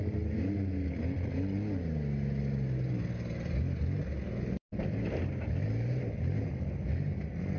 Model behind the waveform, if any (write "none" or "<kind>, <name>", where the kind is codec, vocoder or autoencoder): none